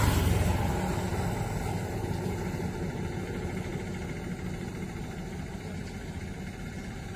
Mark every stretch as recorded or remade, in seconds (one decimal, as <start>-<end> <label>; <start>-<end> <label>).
0.0-7.2 recorded